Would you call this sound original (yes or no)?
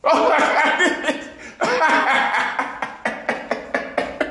yes